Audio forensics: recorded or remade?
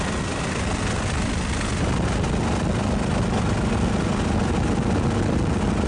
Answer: recorded